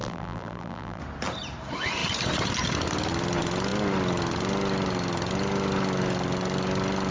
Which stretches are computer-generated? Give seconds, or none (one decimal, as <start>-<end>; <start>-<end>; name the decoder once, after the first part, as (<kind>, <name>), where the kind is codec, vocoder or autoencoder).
0.0-1.0 (vocoder, BigVGAN v2)